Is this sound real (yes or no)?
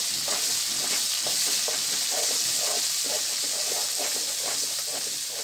yes